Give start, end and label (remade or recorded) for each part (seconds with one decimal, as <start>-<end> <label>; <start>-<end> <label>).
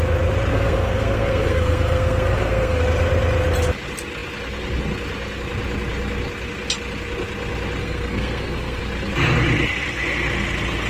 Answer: 0.0-0.5 recorded; 0.5-2.8 remade; 2.8-7.8 recorded; 7.8-8.8 remade; 8.8-10.9 recorded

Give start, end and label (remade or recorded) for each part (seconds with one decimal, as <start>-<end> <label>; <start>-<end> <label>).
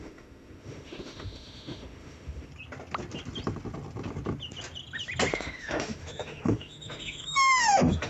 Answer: 0.0-2.5 remade; 2.5-5.3 recorded; 5.3-8.1 remade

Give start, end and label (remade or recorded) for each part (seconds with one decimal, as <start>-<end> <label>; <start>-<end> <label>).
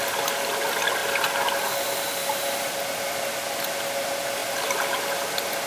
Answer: 0.0-2.2 recorded; 2.2-3.1 remade; 3.1-4.4 recorded; 4.4-5.0 remade; 5.0-5.7 recorded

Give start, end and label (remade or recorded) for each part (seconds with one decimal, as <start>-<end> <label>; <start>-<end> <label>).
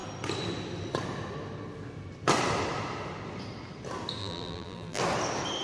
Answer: 0.0-4.2 recorded; 4.2-5.0 remade; 5.0-5.6 recorded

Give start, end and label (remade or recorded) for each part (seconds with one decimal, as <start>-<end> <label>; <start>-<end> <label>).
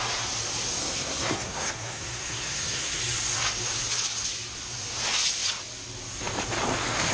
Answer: 0.0-0.8 recorded; 0.8-3.0 remade; 3.0-7.1 recorded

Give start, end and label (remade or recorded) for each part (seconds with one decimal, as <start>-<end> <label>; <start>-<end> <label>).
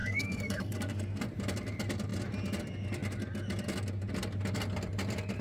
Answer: 0.0-1.2 remade; 1.2-5.4 recorded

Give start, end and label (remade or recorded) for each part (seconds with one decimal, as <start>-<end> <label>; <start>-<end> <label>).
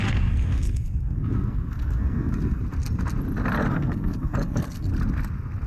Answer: 0.0-2.6 remade; 2.6-3.7 recorded; 3.7-4.9 remade; 4.9-5.7 recorded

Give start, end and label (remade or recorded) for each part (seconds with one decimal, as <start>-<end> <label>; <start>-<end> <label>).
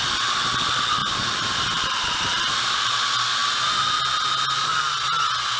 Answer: 0.0-1.0 recorded; 1.0-3.0 remade; 3.0-5.6 recorded